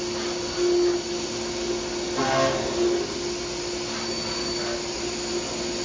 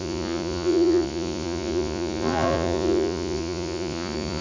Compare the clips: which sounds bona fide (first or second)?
first